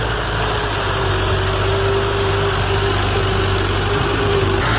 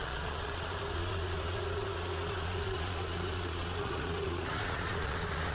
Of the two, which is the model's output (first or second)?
second